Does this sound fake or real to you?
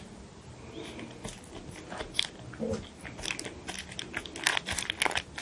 real